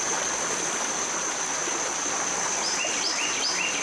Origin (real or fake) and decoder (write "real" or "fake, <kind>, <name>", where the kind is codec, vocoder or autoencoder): real